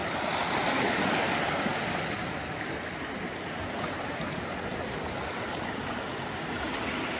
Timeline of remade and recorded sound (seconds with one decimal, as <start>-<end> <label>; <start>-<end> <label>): 0.0-7.2 recorded

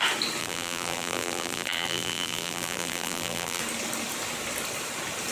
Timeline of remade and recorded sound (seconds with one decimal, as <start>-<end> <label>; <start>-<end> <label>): 0.0-0.4 recorded; 0.4-3.6 remade; 3.6-5.3 recorded

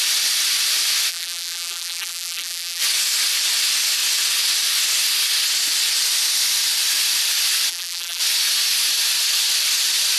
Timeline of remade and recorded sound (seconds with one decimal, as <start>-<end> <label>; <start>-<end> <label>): 0.0-1.1 recorded; 1.1-2.8 remade; 2.8-7.7 recorded; 7.7-8.2 remade; 8.2-10.2 recorded

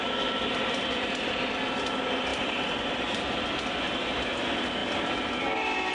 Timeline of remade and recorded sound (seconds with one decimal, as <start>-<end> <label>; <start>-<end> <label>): 0.0-2.3 recorded; 2.3-4.1 remade; 4.1-5.9 recorded

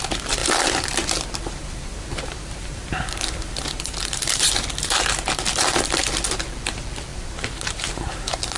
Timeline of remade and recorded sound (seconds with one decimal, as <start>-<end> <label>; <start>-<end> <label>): 0.0-0.4 recorded; 0.4-4.5 remade; 4.5-7.1 recorded; 7.1-8.6 remade

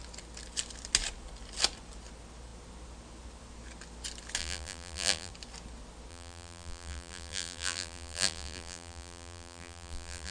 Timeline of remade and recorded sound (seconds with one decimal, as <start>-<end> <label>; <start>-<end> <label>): 0.0-4.4 recorded; 4.4-5.3 remade; 5.3-6.1 recorded; 6.1-10.3 remade